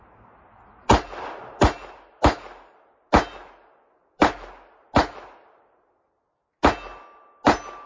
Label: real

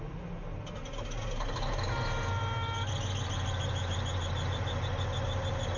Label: real